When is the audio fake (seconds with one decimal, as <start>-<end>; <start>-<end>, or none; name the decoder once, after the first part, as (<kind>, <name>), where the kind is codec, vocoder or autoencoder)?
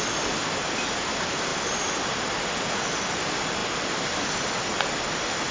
none